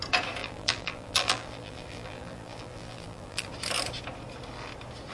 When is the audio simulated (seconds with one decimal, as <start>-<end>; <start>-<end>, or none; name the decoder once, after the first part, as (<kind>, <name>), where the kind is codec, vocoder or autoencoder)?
0.4-3.5 (vocoder, BigVGAN v2)